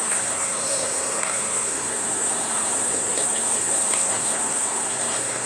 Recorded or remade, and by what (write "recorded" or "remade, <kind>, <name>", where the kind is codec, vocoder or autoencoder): remade, codec, SNAC